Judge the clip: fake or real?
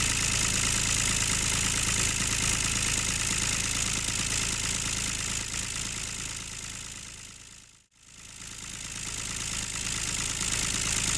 real